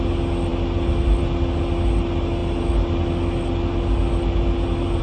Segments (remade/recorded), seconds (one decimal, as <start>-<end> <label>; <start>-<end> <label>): 0.0-5.0 recorded